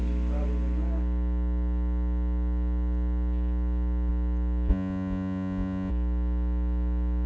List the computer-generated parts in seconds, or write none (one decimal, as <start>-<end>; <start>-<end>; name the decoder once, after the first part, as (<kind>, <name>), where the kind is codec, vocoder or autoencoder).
4.7-5.9 (vocoder, Vocos)